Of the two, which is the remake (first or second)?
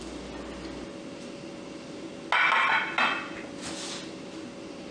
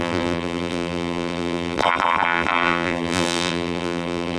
second